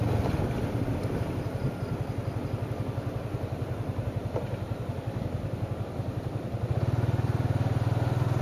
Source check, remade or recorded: recorded